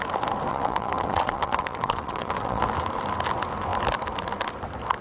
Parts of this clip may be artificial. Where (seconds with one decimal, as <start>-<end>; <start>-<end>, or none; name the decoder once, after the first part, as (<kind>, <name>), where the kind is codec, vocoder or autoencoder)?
0.5-2.6 (vocoder, WaveNeXt)